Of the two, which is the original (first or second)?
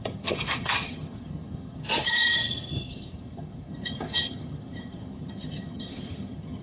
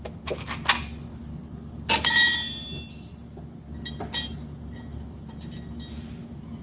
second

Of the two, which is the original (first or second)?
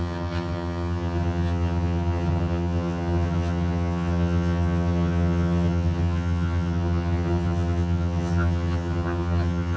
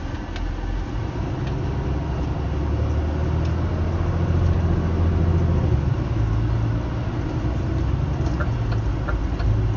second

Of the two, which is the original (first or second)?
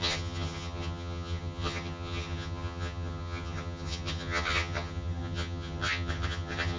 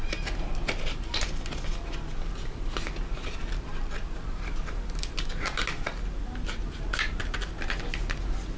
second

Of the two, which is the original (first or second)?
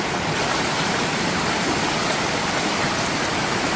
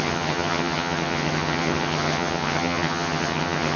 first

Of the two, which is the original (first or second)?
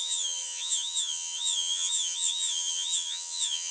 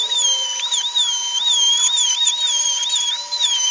second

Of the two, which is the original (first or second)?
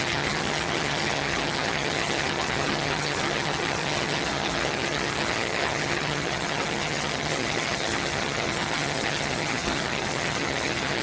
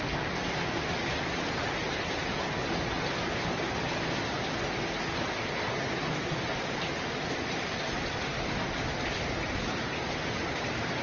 second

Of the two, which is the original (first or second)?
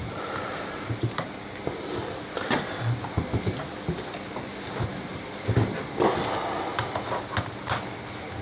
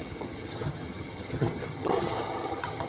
first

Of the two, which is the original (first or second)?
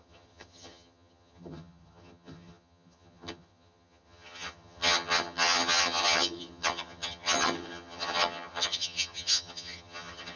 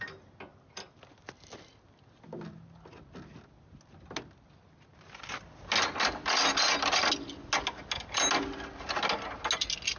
second